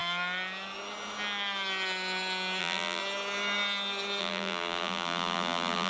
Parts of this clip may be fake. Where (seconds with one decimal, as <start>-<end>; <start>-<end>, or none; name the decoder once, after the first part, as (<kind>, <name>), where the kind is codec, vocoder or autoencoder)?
2.6-3.0 (vocoder, BigVGAN v2); 4.2-5.9